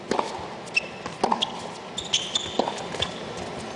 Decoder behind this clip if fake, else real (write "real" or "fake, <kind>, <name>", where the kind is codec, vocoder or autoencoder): real